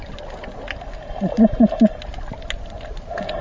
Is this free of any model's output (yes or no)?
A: yes